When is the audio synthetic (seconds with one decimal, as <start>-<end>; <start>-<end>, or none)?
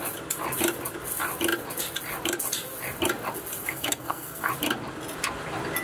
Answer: 3.6-4.5